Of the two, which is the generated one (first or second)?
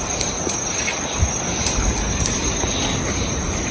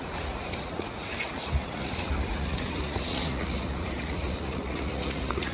second